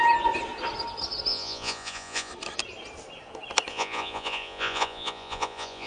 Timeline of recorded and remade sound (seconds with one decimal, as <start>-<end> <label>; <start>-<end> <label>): 0.0-1.3 recorded; 1.3-2.3 remade; 2.3-3.7 recorded; 3.7-5.9 remade